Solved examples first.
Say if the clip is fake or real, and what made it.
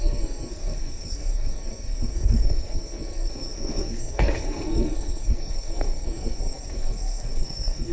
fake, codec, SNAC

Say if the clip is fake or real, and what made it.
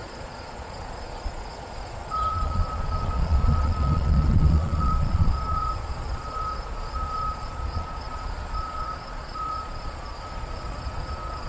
fake, vocoder, Vocos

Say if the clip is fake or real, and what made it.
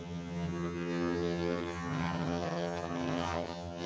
fake, vocoder, HiFi-GAN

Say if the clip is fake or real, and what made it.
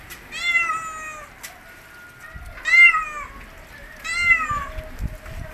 real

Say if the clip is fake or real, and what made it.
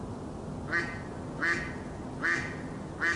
real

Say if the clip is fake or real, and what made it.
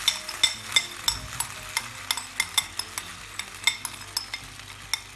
real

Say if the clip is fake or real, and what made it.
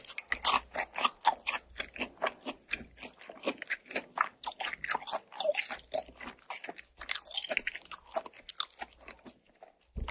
real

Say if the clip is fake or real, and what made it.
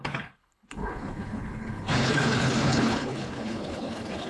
fake, codec, HILCodec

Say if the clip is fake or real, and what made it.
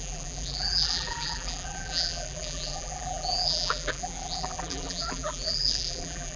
fake, vocoder, BigVGAN v2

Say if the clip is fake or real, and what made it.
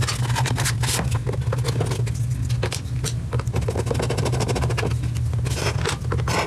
real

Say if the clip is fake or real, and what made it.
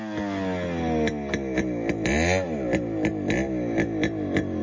real